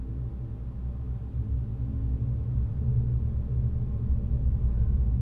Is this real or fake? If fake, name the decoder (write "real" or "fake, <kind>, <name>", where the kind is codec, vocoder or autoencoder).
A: real